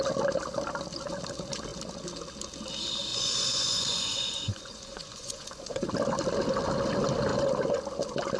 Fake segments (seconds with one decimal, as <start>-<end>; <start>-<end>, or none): 3.1-5.9